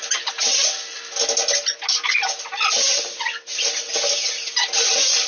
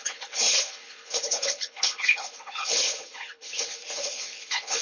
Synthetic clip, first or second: second